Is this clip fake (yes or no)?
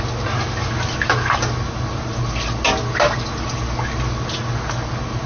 no